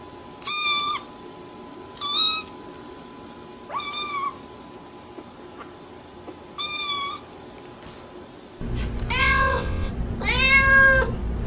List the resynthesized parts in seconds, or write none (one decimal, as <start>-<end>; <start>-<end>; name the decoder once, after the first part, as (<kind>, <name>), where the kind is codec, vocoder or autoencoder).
9.2-9.9 (vocoder, WaveNeXt)